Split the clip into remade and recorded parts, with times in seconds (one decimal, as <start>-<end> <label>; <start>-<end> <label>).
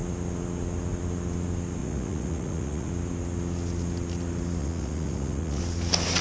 0.0-1.8 recorded; 1.8-2.9 remade; 2.9-4.6 recorded; 4.6-5.6 remade; 5.6-6.2 recorded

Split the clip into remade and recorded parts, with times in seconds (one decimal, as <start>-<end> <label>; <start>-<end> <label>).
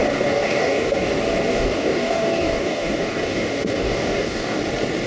0.0-1.1 remade; 1.1-1.5 recorded; 1.5-4.6 remade; 4.6-5.1 recorded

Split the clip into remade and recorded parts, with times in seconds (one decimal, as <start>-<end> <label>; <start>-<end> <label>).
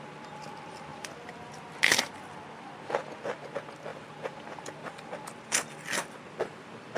0.0-0.9 recorded; 0.9-1.7 remade; 1.7-3.9 recorded; 3.9-7.0 remade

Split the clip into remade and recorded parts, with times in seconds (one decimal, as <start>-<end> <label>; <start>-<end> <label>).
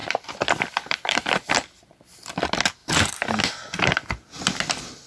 0.0-1.5 remade; 1.5-2.8 recorded; 2.8-3.3 remade; 3.3-5.1 recorded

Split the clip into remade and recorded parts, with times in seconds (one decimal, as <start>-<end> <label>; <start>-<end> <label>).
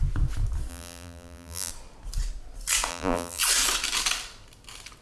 0.0-0.7 recorded; 0.7-1.7 remade; 1.7-2.9 recorded; 2.9-3.4 remade; 3.4-5.0 recorded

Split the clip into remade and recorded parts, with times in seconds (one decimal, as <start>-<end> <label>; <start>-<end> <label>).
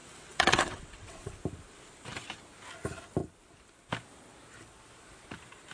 0.0-1.3 remade; 1.3-5.7 recorded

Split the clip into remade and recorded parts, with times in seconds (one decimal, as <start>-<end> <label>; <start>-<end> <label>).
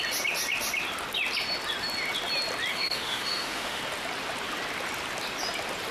0.0-2.7 recorded; 2.7-3.8 remade; 3.8-5.9 recorded